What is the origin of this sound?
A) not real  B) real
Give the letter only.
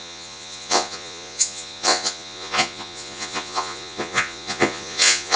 A